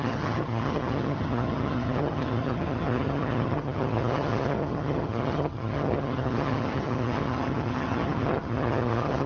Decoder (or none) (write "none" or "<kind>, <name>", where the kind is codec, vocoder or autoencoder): vocoder, HiFi-GAN